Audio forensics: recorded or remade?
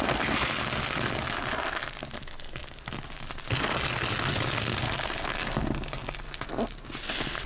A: recorded